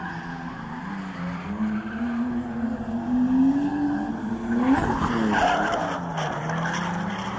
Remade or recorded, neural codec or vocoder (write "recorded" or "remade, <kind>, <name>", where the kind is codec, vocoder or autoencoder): recorded